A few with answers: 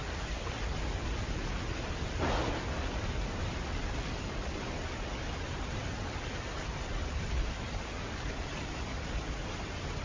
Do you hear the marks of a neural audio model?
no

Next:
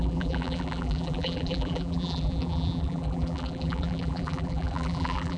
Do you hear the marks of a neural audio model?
yes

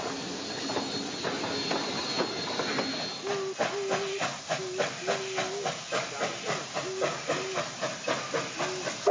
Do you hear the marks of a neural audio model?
no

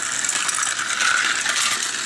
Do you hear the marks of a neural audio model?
no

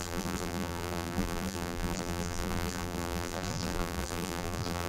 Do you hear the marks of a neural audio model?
yes